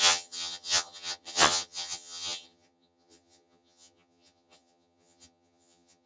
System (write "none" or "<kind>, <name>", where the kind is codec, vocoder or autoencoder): vocoder, HiFi-GAN